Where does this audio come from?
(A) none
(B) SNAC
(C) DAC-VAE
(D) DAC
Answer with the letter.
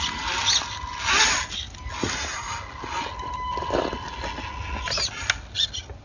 A